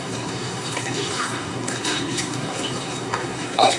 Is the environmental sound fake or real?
fake